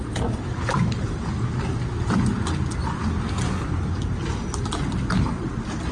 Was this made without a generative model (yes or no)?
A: yes